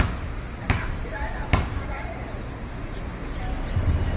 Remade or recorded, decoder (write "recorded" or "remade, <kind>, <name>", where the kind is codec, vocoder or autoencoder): recorded